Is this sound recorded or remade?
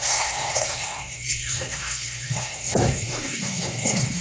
remade